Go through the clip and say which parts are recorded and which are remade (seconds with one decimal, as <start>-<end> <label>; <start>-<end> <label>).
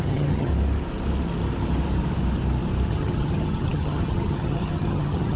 0.0-0.5 remade; 0.5-2.9 recorded; 2.9-5.4 remade